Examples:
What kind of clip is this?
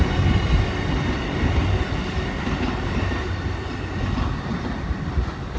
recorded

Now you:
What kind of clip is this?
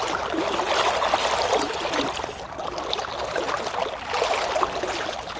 recorded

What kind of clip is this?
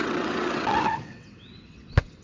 remade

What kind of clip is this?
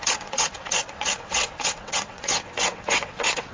remade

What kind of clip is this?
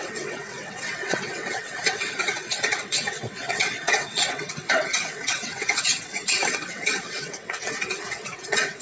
remade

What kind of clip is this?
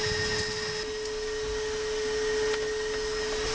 recorded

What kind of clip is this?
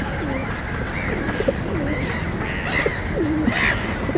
recorded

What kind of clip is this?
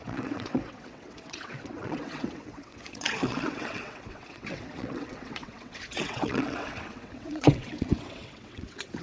remade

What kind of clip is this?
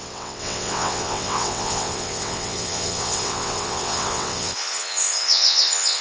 remade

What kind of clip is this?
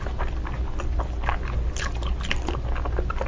recorded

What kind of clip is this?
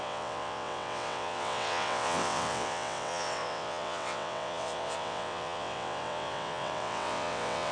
remade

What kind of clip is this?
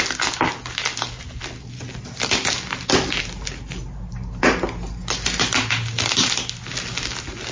recorded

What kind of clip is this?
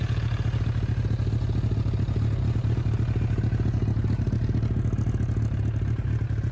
recorded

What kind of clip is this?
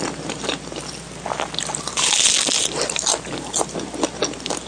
recorded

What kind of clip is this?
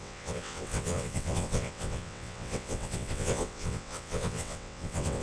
remade